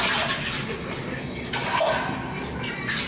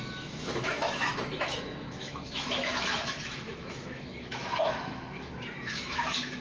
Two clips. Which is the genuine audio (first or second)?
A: first